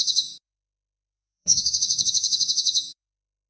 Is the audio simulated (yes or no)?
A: yes